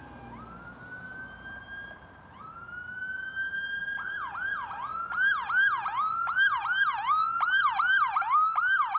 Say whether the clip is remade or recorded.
recorded